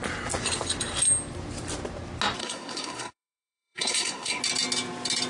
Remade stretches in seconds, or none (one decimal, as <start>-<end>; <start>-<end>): 2.4-4.4